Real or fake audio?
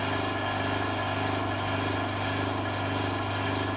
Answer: real